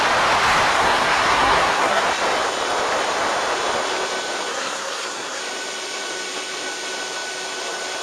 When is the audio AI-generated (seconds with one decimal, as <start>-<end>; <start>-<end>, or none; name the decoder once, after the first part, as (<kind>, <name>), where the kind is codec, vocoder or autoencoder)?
0.7-2.0 (codec, SNAC); 4.5-5.4